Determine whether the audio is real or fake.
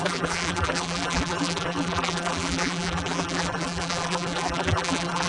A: fake